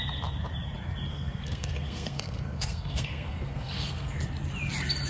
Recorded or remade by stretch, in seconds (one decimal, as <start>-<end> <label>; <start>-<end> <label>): 0.0-1.1 recorded; 1.1-4.2 remade; 4.2-5.1 recorded